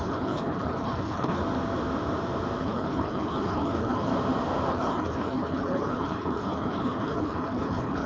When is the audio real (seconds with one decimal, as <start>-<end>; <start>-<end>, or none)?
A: 1.4-2.6; 4.1-4.7